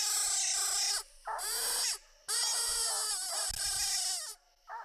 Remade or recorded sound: recorded